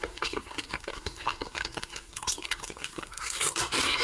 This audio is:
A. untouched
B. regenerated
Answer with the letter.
B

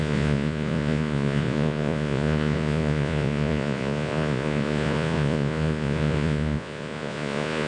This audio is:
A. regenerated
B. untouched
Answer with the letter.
A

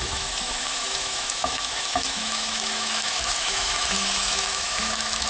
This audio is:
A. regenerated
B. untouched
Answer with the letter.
A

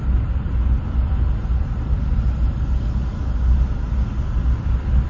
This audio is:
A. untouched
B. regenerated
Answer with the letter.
A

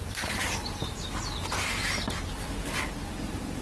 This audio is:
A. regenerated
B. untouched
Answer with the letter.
B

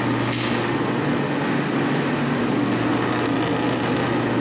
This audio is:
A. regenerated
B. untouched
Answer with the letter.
B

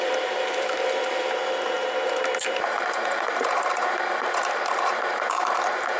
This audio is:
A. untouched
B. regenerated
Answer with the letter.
B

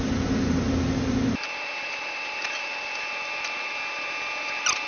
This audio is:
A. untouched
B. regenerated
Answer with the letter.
A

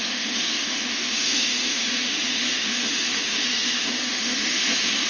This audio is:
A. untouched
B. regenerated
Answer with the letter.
B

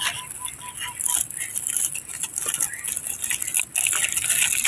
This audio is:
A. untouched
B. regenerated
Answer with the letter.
A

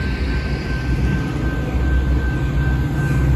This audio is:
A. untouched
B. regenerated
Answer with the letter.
A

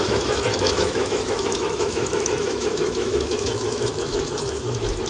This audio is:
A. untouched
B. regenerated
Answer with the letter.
B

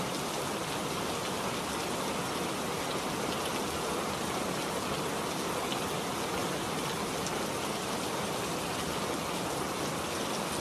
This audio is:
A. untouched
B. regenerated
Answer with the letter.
A